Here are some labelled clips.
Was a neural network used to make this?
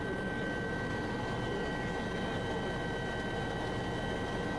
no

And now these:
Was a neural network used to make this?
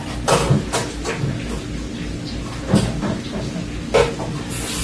no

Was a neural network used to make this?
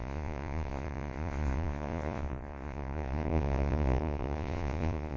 yes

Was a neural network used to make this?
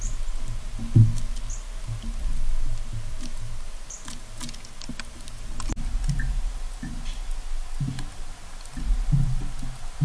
no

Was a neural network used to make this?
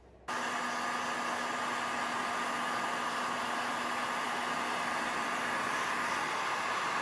no